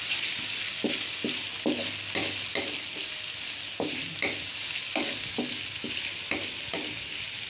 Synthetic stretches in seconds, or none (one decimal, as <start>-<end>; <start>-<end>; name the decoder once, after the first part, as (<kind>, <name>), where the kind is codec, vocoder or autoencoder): none